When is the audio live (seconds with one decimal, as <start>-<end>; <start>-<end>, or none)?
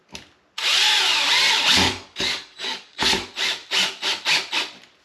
0.0-1.7; 3.1-5.0